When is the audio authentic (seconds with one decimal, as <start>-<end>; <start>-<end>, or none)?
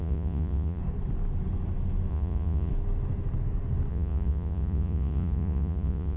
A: 0.8-2.1; 2.7-3.9